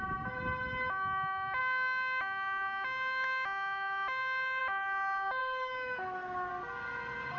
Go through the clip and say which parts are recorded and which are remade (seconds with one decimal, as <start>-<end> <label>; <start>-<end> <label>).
0.0-5.4 recorded; 5.4-6.5 remade; 6.5-7.4 recorded

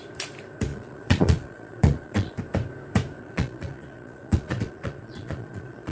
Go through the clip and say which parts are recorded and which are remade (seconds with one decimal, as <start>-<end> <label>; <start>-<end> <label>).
0.0-0.7 recorded; 0.7-2.4 remade; 2.4-3.2 recorded; 3.2-5.9 remade

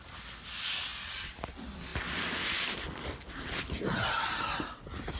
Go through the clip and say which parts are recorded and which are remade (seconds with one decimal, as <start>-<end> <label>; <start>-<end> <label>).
0.0-5.2 recorded